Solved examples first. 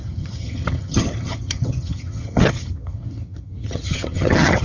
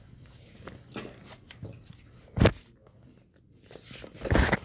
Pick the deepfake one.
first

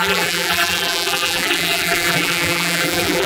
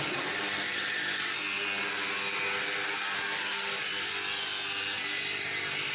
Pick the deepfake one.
first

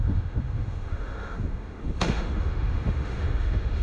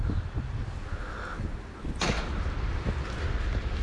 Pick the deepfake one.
first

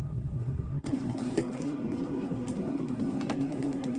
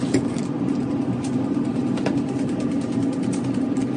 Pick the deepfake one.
first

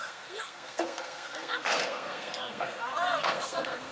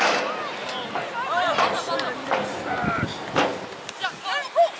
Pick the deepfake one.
first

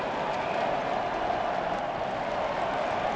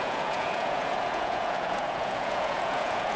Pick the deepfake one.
second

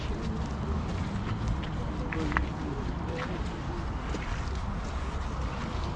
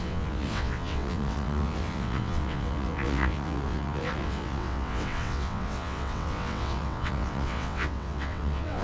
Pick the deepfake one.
second